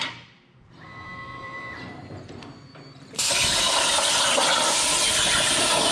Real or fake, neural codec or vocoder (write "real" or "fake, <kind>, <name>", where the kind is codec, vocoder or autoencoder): fake, vocoder, BigVGAN v2